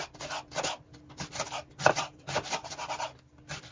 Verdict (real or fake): real